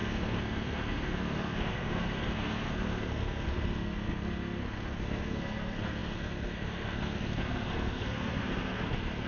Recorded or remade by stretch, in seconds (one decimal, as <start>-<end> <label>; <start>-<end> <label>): 0.0-9.3 remade